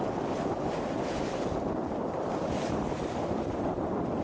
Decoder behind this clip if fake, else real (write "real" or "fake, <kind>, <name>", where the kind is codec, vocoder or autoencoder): real